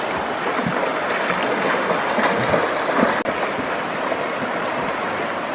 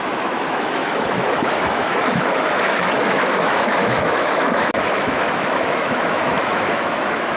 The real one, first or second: first